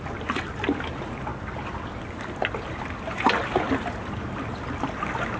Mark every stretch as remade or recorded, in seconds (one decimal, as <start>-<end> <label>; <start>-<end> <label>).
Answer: 0.0-5.4 recorded